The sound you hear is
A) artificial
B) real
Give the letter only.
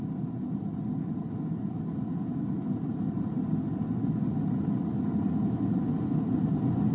B